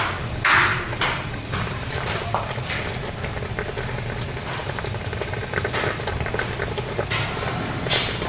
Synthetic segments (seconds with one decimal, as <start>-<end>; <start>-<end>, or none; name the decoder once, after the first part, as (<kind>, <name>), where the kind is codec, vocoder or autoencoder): 0.7-2.9 (vocoder, BigVGAN v2); 4.6-6.3